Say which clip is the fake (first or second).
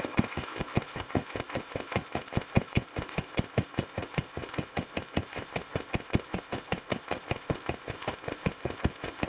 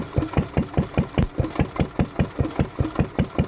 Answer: first